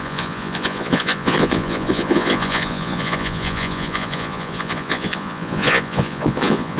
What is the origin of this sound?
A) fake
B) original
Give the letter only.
A